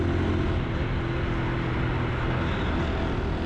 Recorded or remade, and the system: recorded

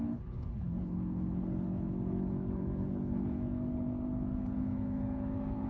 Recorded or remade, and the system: remade, codec, HILCodec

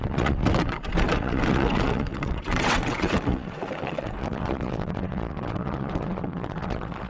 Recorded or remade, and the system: remade, vocoder, WaveNeXt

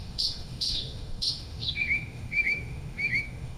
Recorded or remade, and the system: remade, autoencoder, DAC-VAE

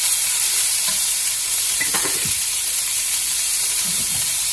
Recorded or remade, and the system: remade, vocoder, BigVGAN v2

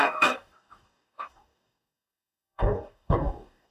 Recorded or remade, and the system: remade, codec, DAC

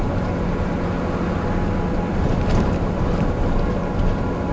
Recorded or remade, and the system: recorded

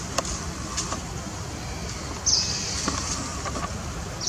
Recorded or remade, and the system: recorded